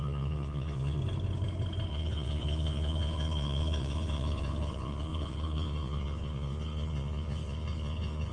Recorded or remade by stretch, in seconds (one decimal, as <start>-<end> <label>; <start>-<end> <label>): 0.0-1.0 remade; 1.0-1.9 recorded; 1.9-8.3 remade